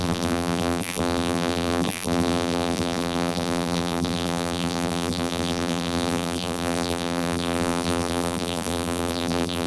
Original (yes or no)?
no